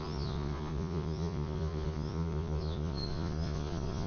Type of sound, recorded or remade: remade